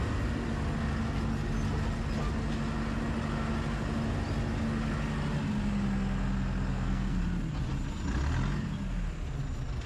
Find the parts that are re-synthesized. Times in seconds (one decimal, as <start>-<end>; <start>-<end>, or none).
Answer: 6.7-7.2

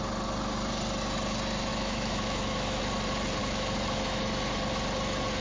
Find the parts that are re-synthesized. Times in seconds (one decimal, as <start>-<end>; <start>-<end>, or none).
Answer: 1.7-2.8; 3.4-4.2